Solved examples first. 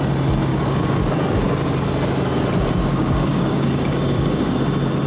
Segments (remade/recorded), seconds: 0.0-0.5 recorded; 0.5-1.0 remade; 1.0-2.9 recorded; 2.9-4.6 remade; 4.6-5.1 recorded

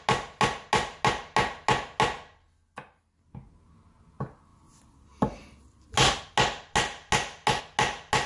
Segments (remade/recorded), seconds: 0.0-8.3 recorded

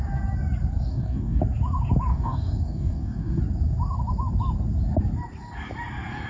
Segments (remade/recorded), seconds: 0.0-0.9 recorded; 0.9-1.4 remade; 1.4-2.1 recorded; 2.1-3.4 remade; 3.4-6.3 recorded

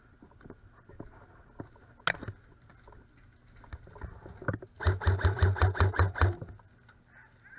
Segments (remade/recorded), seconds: 0.0-7.6 recorded

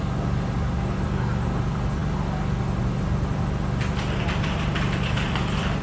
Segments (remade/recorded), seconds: 0.0-5.8 recorded